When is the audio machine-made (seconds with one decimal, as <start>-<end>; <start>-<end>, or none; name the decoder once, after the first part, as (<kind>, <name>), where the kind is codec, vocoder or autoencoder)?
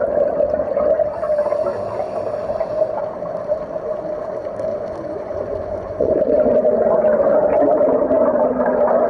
4.7-6.1 (vocoder, Vocos)